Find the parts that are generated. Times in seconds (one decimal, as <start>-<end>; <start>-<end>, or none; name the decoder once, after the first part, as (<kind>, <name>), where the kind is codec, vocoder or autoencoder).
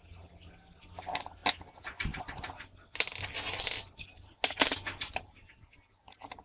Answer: none